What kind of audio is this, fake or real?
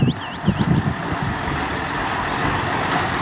real